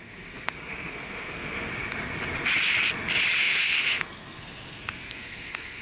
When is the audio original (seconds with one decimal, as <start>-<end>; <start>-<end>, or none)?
1.7-3.4